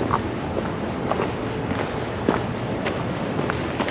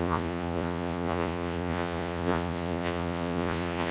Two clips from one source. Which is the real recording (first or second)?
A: first